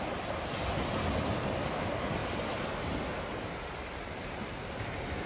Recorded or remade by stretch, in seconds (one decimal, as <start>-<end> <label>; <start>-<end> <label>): 0.0-5.3 recorded